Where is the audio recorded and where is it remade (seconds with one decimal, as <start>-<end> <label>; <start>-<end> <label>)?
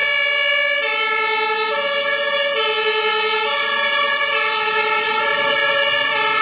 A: 0.0-2.0 recorded; 2.0-5.6 remade; 5.6-6.4 recorded